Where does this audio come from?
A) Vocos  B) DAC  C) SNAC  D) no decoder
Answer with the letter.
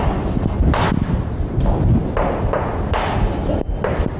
D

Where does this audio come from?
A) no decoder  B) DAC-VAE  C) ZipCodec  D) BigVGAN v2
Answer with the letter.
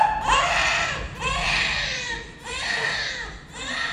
D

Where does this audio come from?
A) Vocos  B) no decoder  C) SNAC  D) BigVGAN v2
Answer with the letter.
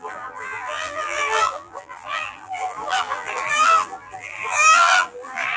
D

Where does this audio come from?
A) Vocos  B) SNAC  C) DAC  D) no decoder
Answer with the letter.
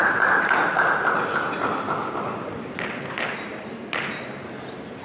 D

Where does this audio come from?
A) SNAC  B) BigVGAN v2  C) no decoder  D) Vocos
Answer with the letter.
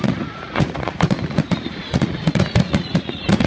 D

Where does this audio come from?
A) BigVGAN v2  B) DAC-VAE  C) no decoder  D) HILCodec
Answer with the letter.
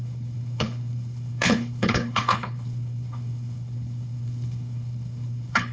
D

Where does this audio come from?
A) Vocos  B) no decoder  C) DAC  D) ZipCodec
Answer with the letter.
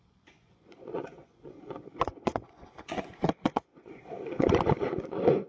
A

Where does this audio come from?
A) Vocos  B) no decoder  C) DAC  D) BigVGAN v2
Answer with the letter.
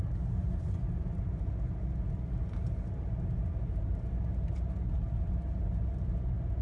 B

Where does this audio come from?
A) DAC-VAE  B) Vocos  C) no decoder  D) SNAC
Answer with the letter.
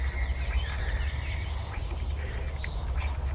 C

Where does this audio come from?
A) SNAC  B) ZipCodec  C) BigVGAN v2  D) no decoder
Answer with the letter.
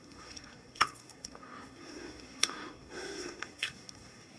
A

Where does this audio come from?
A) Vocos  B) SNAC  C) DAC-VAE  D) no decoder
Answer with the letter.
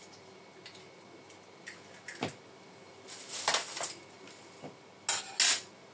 D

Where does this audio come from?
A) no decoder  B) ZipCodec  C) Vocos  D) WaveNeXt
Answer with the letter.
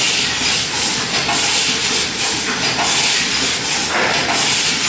A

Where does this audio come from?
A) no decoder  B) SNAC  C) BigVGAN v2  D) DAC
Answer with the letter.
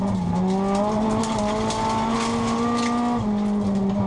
A